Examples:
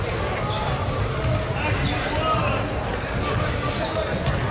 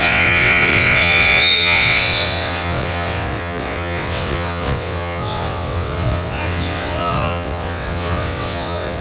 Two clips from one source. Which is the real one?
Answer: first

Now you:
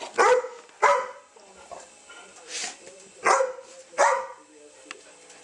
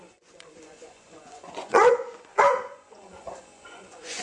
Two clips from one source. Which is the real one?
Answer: first